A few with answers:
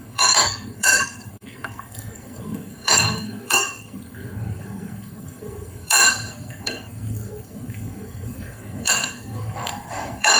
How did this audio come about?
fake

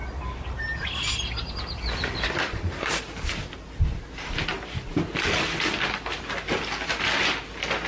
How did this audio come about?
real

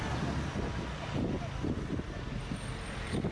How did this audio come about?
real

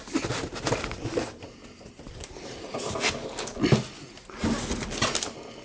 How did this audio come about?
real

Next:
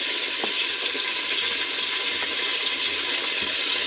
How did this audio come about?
real